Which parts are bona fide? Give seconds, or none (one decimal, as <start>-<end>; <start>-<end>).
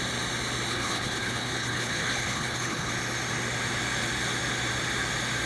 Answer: 0.0-0.7; 2.9-5.5